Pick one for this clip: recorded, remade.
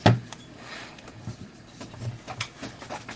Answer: recorded